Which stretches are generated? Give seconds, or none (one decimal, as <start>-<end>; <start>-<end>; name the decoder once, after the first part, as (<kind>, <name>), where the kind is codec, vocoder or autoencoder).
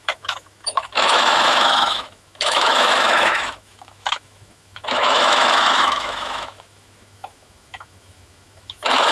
0.0-9.1 (autoencoder, DAC-VAE)